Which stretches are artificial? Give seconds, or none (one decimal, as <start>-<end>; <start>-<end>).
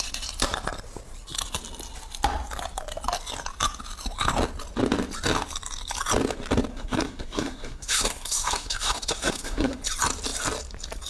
6.7-9.8